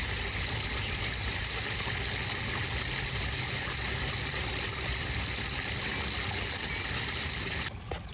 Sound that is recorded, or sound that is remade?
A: recorded